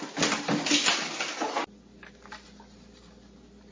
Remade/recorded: recorded